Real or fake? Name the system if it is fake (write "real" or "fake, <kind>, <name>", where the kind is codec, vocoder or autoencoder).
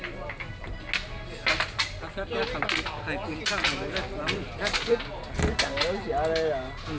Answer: real